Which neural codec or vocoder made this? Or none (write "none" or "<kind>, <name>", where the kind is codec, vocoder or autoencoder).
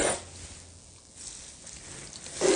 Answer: none